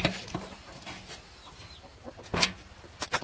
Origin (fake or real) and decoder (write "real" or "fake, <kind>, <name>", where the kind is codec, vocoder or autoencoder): real